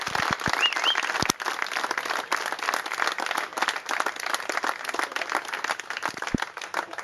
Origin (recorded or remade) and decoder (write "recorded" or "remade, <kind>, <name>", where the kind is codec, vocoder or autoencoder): recorded